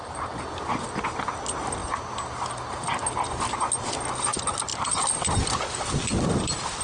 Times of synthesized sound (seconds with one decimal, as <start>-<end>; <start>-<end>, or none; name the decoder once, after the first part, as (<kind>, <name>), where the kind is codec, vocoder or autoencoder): none